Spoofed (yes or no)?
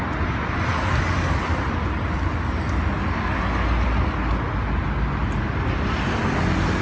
no